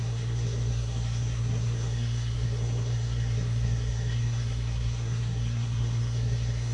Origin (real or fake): fake